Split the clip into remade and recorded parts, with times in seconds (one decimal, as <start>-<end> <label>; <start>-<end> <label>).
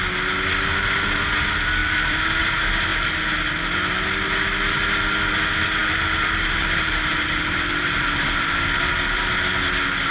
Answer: 0.0-1.8 recorded; 1.8-2.4 remade; 2.4-5.8 recorded; 5.8-9.4 remade; 9.4-10.1 recorded